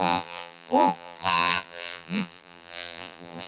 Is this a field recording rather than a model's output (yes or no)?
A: no